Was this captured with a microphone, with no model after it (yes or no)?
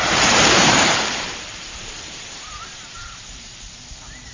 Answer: no